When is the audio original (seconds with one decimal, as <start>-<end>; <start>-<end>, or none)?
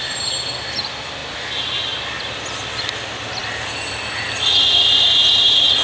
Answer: 0.0-5.8